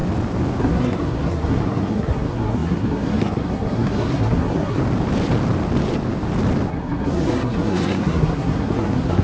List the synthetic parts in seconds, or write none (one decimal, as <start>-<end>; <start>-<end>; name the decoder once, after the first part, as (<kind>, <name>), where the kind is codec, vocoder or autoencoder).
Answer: 0.6-4.8 (codec, SNAC); 6.7-9.2